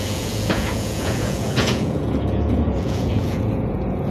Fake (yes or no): yes